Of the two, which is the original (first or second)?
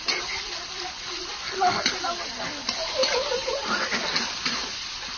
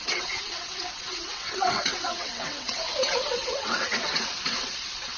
first